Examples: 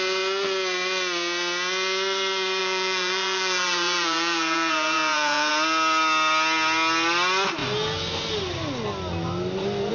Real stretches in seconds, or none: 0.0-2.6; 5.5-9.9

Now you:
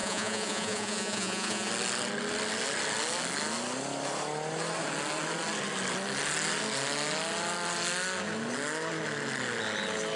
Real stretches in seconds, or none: 1.7-10.2

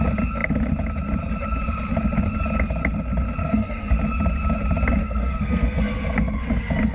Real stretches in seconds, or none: 0.0-3.4; 3.9-5.0; 5.9-6.9

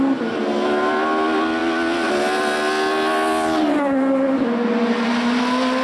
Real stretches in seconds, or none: 0.0-5.8

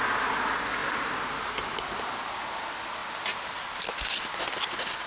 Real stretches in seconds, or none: 0.0-5.1